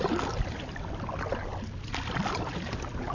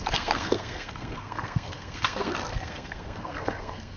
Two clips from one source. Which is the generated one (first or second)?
second